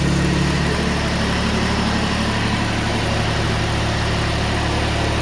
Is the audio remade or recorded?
remade